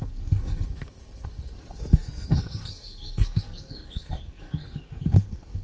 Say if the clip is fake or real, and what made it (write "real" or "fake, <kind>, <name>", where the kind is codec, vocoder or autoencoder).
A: fake, codec, SNAC